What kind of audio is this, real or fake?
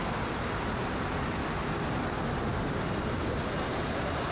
real